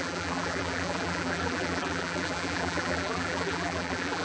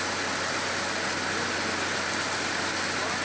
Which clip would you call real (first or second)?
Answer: second